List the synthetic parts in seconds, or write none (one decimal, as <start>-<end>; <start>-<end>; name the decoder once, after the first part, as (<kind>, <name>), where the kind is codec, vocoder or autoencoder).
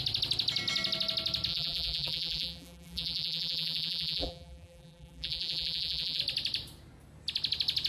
1.5-6.2 (vocoder, BigVGAN v2)